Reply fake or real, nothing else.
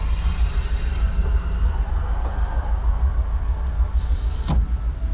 real